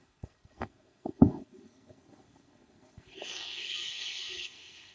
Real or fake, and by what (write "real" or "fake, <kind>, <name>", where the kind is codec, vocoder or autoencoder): fake, codec, SNAC